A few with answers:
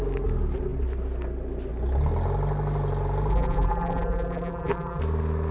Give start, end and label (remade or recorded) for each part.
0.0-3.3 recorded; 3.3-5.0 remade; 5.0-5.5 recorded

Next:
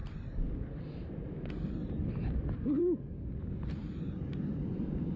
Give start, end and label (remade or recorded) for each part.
0.0-2.8 remade; 2.8-3.5 recorded; 3.5-5.2 remade

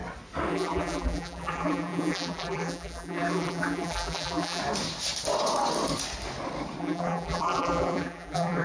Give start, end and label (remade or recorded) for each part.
0.0-0.5 recorded; 0.5-4.6 remade; 4.6-6.8 recorded; 6.8-8.6 remade

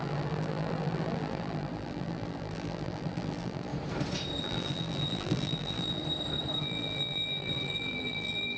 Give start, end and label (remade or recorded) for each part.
0.0-3.7 remade; 3.7-4.4 recorded; 4.4-6.0 remade; 6.0-6.6 recorded; 6.6-8.6 remade

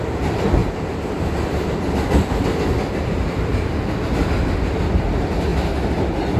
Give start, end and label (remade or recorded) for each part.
0.0-0.6 recorded; 0.6-1.7 remade; 1.7-6.4 recorded